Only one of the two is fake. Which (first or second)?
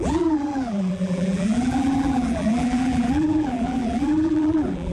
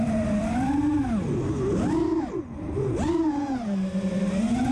first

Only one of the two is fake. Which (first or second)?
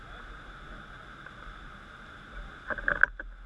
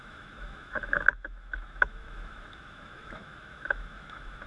second